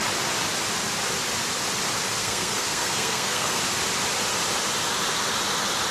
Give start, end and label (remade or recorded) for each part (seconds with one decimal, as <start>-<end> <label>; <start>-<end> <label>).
0.0-2.2 recorded; 2.2-3.6 remade; 3.6-5.9 recorded